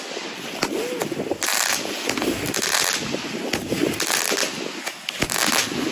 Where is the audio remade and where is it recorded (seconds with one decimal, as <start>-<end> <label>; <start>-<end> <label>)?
0.0-4.4 remade; 4.4-5.9 recorded